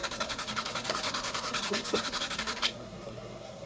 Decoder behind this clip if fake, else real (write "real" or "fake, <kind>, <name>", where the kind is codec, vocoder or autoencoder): fake, codec, SNAC